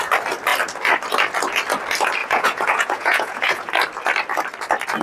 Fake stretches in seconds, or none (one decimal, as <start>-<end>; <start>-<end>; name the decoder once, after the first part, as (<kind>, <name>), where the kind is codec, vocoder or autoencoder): 2.2-3.7 (vocoder, Vocos)